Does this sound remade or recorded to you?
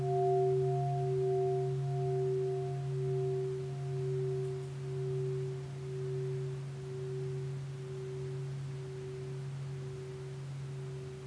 recorded